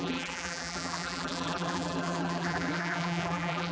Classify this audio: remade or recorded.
remade